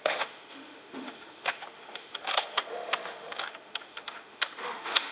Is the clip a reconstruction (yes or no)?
yes